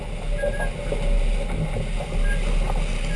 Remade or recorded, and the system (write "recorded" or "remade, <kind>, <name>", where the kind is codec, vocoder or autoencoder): recorded